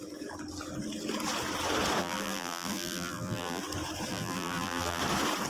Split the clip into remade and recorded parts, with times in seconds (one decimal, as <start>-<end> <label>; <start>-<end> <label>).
0.0-2.0 recorded; 2.0-3.6 remade; 3.6-4.1 recorded; 4.1-5.0 remade; 5.0-5.5 recorded

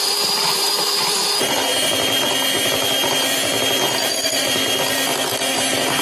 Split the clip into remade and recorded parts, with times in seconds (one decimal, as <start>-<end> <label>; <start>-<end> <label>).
0.0-1.7 remade; 1.7-4.1 recorded; 4.1-4.6 remade; 4.6-6.0 recorded

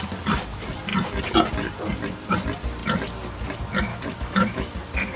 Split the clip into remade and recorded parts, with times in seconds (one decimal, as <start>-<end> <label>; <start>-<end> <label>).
0.0-3.9 recorded; 3.9-4.7 remade; 4.7-5.2 recorded

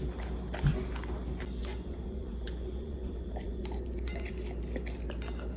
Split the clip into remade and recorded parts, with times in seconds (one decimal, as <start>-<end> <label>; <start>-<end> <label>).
0.0-1.6 recorded; 1.6-4.3 remade; 4.3-5.6 recorded

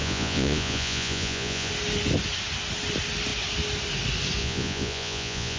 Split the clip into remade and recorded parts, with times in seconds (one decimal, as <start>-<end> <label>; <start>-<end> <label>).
0.0-1.7 remade; 1.7-4.4 recorded; 4.4-5.6 remade